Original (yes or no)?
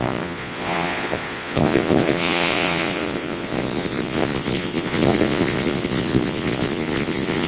no